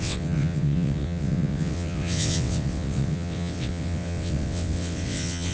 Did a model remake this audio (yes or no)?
yes